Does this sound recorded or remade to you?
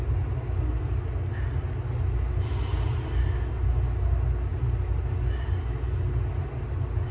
recorded